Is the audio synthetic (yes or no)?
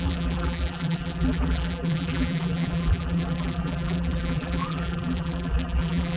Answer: yes